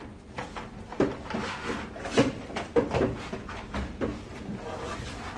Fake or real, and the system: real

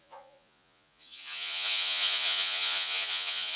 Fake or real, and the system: fake, vocoder, Vocos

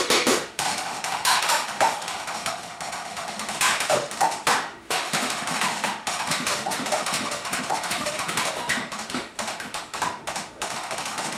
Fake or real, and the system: fake, autoencoder, DAC-VAE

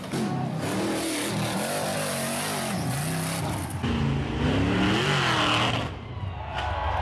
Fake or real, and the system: real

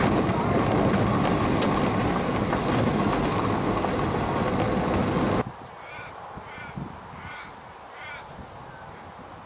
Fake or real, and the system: real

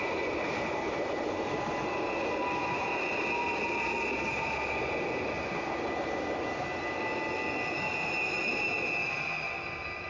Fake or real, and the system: real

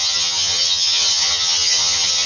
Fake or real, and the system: fake, vocoder, HiFi-GAN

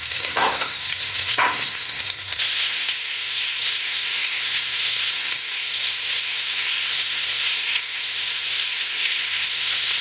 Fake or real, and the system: fake, codec, SNAC